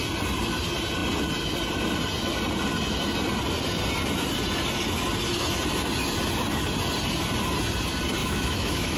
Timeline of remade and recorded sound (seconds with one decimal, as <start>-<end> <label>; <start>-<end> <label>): 0.0-8.2 recorded; 8.2-9.0 remade